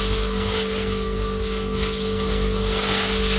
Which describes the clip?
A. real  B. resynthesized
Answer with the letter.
B